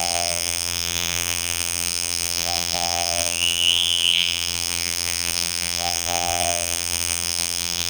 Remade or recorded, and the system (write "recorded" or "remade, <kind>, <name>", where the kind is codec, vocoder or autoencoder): remade, vocoder, BigVGAN v2